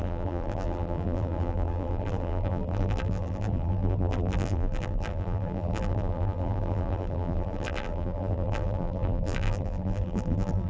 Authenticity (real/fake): fake